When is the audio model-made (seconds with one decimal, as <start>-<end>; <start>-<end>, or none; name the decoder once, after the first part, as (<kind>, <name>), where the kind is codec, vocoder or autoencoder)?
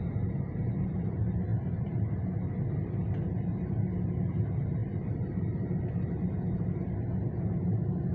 none